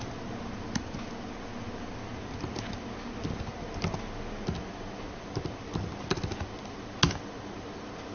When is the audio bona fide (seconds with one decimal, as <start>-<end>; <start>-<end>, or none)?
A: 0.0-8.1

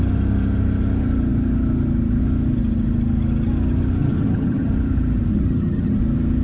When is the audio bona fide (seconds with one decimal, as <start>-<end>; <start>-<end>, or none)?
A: 0.0-4.0; 4.7-5.3; 6.0-6.4

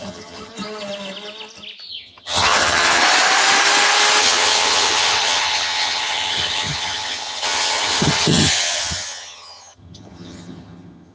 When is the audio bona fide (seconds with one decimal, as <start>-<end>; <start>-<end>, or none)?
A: 0.5-1.9; 3.0-4.2